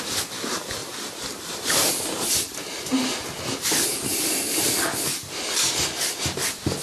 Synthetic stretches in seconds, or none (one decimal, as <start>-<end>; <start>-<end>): 0.8-2.4